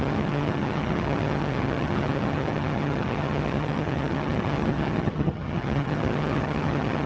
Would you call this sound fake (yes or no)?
yes